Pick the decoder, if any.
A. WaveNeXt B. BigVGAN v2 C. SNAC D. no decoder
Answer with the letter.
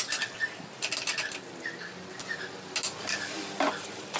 D